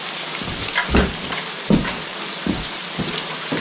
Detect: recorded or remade recorded